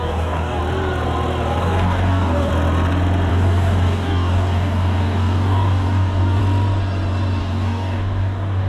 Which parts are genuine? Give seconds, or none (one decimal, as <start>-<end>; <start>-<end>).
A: 0.6-1.6; 2.5-3.3; 6.4-7.4